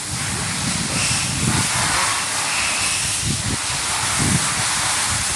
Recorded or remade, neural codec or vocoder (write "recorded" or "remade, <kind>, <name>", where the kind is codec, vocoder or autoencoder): recorded